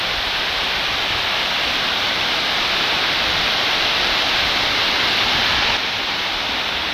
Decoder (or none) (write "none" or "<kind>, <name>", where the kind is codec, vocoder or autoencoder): none